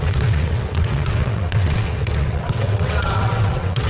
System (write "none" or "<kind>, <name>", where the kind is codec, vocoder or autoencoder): vocoder, WaveNeXt